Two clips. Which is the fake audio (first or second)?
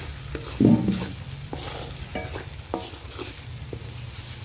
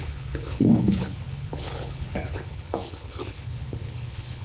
second